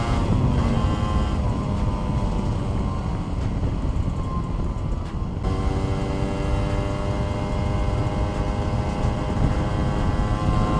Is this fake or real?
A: real